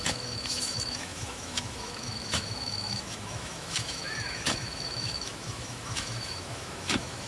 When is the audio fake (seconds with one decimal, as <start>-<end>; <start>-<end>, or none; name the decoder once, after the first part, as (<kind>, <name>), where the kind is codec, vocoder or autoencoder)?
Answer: 0.0-7.3 (autoencoder, DAC-VAE)